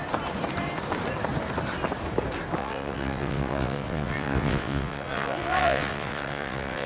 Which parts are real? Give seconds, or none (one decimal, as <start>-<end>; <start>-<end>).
0.0-2.6